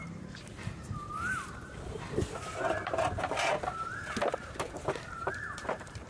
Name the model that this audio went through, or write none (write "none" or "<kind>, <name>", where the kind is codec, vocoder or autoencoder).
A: vocoder, BigVGAN v2